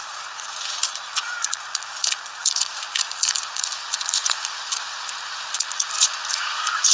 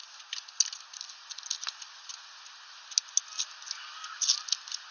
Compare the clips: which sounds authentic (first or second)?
second